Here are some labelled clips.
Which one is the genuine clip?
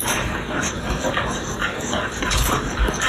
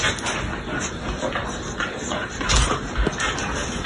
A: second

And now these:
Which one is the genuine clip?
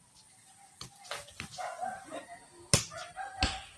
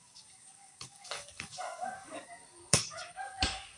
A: first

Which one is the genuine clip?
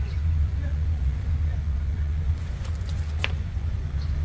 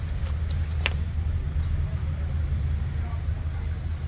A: second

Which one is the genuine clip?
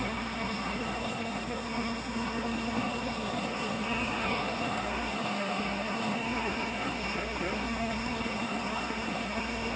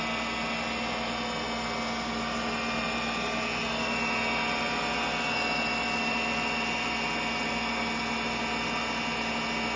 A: second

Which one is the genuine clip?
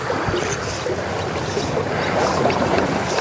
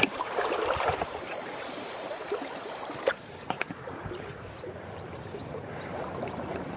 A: first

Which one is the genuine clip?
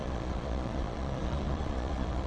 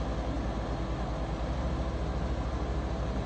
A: second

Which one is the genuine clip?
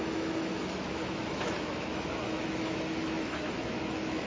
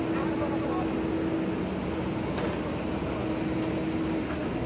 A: second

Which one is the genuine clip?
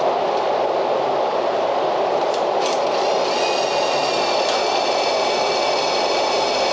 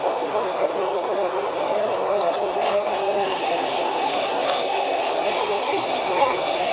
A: first